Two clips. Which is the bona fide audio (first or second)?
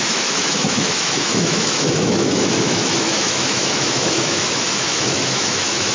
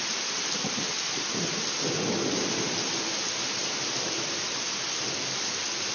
second